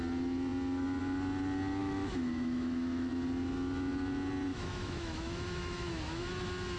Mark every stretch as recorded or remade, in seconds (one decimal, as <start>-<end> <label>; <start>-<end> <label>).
0.0-1.8 recorded; 1.8-3.1 remade; 3.1-4.5 recorded; 4.5-6.3 remade; 6.3-6.8 recorded